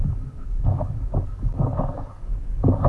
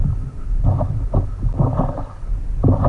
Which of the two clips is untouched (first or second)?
second